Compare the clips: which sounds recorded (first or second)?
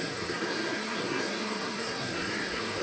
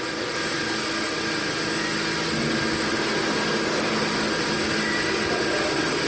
second